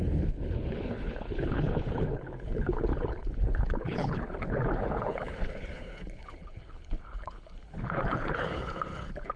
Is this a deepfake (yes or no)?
yes